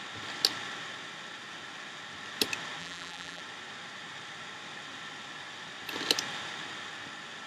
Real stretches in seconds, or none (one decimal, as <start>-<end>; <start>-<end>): 0.0-2.8; 3.4-7.5